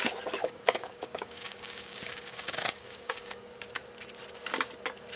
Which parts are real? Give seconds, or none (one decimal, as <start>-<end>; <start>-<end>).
0.0-0.4; 3.5-5.2